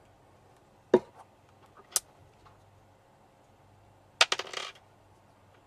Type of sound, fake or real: real